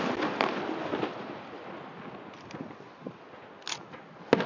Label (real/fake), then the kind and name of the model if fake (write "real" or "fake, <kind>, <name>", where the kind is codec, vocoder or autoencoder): real